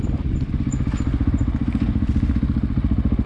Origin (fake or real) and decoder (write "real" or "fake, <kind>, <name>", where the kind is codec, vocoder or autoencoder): real